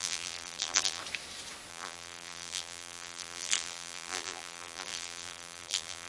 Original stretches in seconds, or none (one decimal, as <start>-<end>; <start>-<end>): 1.0-1.7